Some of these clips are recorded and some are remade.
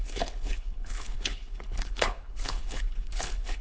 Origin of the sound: remade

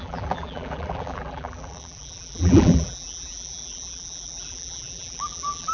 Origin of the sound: remade